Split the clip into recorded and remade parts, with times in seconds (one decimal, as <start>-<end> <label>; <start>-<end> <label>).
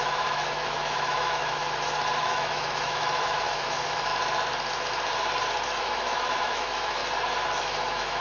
0.0-1.6 remade; 1.6-2.2 recorded; 2.2-4.1 remade; 4.1-5.8 recorded; 5.8-7.0 remade; 7.0-7.6 recorded; 7.6-8.2 remade